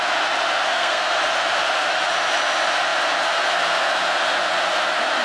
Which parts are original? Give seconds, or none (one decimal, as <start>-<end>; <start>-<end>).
0.0-0.7; 1.2-5.2